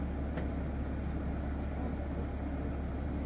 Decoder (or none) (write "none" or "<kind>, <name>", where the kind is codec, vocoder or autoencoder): none